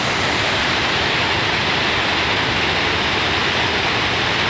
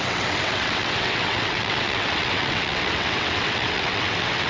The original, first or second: first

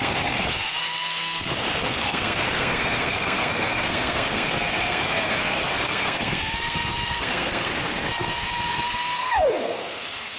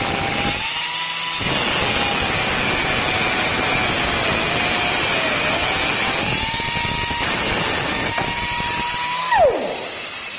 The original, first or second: second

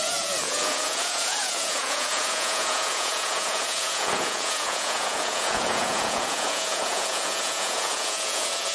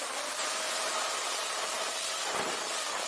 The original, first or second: second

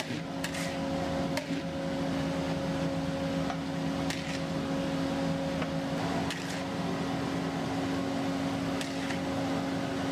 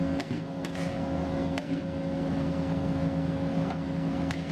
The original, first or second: first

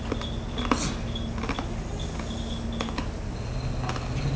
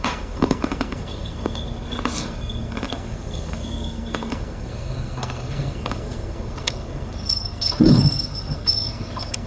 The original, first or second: first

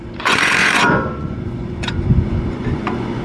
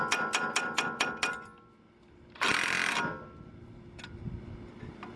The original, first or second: second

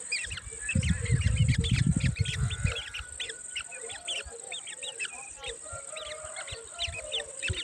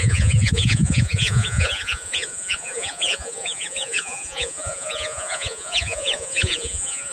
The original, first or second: first